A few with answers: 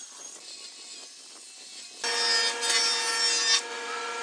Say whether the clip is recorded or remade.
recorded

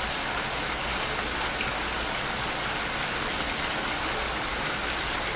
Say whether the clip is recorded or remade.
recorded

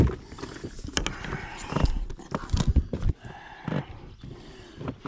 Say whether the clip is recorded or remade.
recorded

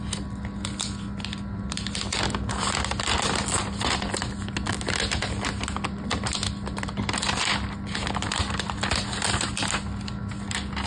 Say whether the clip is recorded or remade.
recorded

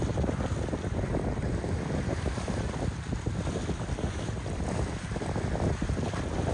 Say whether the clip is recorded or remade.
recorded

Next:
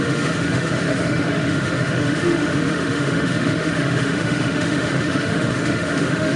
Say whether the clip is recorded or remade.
remade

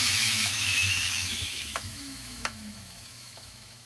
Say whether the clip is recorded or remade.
remade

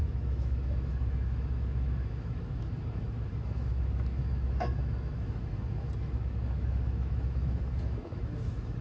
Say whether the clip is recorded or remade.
remade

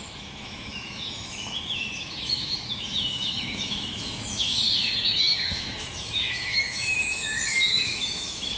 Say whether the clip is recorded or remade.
remade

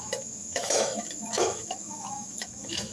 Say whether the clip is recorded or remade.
remade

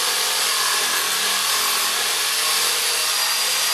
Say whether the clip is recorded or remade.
recorded